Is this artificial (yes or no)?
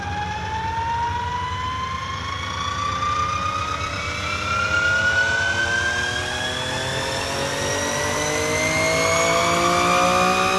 no